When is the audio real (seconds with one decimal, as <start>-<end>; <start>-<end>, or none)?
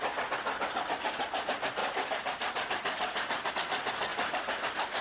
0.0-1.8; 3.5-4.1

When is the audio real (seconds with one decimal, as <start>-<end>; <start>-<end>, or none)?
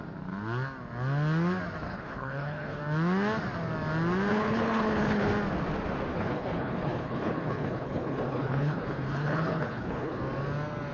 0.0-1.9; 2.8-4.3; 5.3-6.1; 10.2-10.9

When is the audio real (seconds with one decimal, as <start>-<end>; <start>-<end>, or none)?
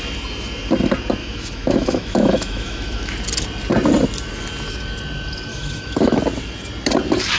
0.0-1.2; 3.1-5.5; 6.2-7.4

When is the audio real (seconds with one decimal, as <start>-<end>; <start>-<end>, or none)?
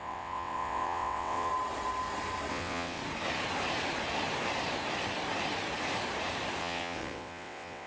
1.5-2.5; 3.0-6.6